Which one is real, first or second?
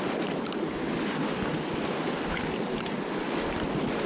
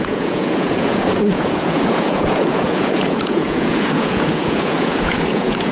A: first